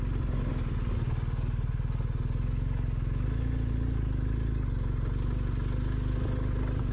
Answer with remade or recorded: recorded